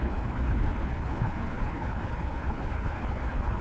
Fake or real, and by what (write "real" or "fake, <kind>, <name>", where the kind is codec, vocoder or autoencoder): fake, codec, HILCodec